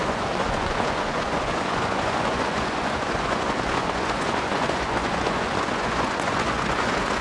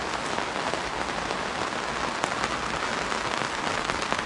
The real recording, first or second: second